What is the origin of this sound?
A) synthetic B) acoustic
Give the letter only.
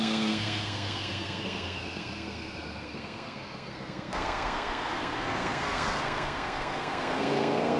A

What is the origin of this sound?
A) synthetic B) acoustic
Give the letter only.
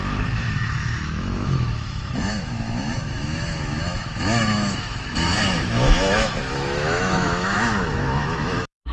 A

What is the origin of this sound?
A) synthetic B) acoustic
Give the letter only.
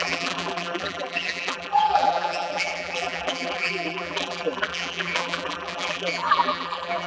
A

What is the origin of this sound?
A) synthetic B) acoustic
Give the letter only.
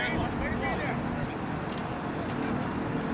B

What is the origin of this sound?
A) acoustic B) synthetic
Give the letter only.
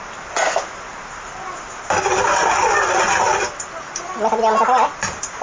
A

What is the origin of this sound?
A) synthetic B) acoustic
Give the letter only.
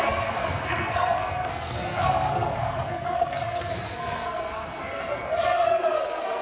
A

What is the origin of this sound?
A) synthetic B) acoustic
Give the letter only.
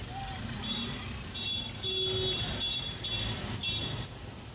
B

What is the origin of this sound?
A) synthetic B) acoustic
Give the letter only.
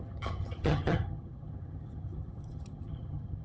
A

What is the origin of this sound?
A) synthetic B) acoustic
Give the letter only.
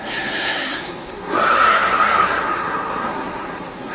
A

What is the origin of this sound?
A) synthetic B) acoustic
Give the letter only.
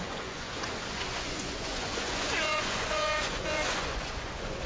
A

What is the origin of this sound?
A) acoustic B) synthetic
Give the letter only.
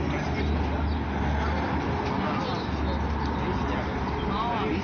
A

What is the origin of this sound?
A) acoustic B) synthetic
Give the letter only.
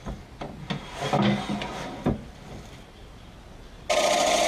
A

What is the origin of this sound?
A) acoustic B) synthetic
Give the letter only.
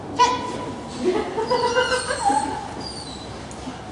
A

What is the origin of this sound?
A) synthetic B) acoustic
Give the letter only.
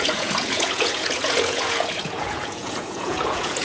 A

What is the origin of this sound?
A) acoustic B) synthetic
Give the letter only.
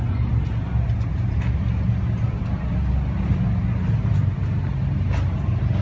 A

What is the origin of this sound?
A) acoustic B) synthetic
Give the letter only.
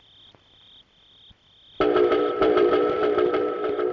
B